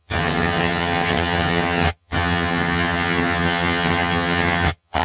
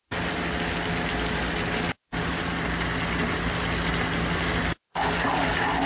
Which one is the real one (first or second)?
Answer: second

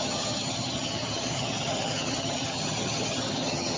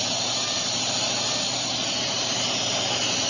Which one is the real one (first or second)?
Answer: second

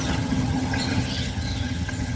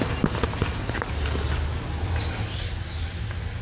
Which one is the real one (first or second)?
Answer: second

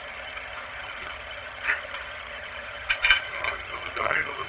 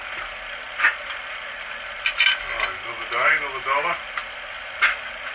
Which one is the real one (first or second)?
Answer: second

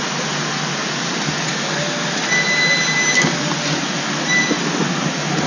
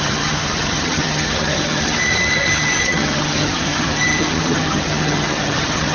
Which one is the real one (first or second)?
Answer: first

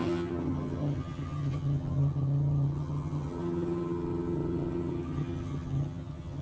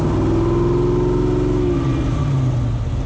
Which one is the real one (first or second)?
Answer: second